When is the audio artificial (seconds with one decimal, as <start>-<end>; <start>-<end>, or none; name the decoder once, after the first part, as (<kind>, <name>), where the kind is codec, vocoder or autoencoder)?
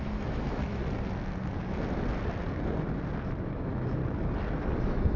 0.0-0.8 (autoencoder, DAC-VAE); 3.4-4.0; 4.8-5.2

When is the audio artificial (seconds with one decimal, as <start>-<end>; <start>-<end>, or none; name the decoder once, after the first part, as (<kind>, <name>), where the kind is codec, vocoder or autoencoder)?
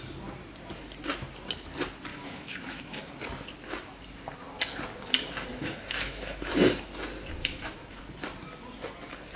2.1-3.0 (autoencoder, DAC-VAE); 5.5-6.5; 7.4-8.0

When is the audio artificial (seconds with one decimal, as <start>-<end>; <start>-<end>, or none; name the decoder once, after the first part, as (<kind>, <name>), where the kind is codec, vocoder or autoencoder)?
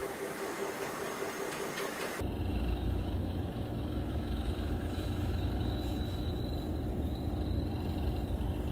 0.0-0.5 (autoencoder, DAC-VAE); 2.5-6.4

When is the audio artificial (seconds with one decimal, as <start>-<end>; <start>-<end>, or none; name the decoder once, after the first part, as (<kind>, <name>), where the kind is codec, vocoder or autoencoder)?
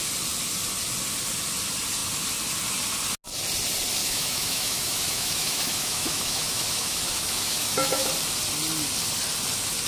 4.0-8.1 (autoencoder, DAC-VAE)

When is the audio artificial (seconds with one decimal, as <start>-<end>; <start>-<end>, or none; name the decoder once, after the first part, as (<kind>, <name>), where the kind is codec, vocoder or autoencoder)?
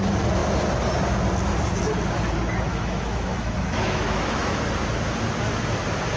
2.7-4.6 (autoencoder, DAC-VAE)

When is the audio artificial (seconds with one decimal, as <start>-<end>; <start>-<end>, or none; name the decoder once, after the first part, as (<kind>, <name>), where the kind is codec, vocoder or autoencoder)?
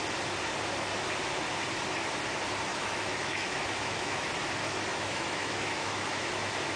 2.7-4.3 (autoencoder, DAC-VAE); 4.9-6.3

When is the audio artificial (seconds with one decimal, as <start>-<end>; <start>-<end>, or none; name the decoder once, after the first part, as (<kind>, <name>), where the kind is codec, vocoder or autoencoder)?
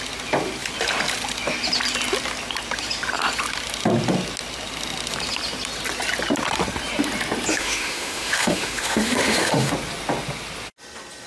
7.5-9.7 (autoencoder, DAC-VAE)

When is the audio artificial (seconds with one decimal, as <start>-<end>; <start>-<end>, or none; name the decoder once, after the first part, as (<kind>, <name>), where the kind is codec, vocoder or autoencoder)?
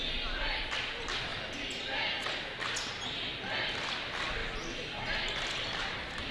none